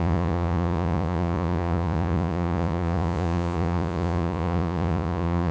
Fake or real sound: fake